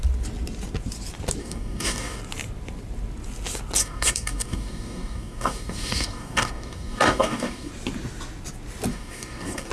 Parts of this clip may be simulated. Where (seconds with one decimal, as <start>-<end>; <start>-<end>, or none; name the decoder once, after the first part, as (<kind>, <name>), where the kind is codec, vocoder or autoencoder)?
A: 1.4-2.2 (codec, DAC); 3.8-7.7; 8.9-9.7